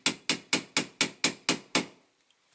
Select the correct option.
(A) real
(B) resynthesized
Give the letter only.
A